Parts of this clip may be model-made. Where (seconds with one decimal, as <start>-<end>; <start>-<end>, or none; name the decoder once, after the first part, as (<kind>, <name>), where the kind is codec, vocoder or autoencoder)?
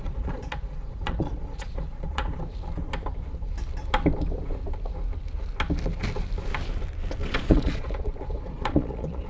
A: 0.0-2.4 (vocoder, Vocos); 7.2-9.3